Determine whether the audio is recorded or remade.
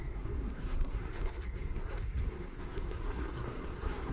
remade